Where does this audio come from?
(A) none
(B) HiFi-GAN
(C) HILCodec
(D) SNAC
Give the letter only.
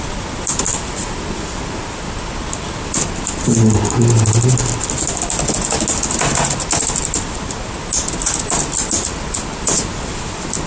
A